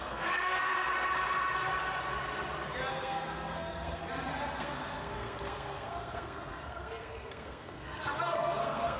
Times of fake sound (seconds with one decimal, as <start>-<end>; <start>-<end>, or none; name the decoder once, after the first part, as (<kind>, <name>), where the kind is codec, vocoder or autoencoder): 0.0-0.7 (codec, SNAC); 2.9-4.0; 4.6-9.0